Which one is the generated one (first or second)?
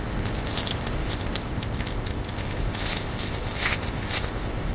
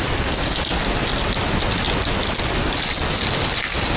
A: first